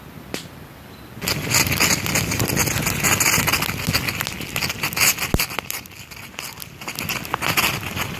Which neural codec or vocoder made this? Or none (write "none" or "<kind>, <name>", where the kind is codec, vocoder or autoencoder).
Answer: none